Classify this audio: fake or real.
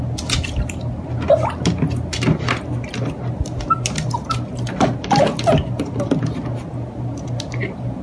real